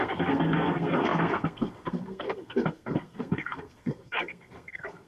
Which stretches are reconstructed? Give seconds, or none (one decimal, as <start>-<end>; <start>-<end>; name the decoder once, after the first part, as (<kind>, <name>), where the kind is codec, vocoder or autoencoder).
0.0-5.1 (codec, SNAC)